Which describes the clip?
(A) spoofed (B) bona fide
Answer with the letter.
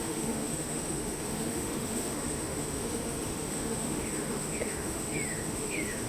A